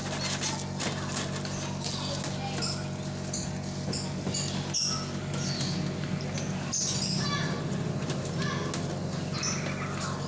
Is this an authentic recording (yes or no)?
yes